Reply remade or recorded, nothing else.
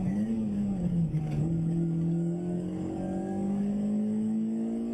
remade